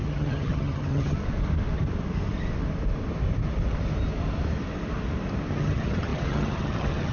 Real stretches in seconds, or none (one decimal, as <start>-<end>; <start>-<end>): 1.2-5.5